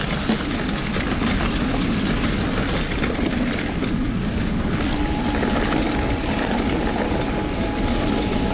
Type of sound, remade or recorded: recorded